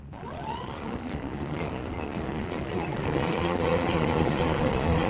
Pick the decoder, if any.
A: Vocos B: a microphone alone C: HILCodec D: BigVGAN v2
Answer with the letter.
A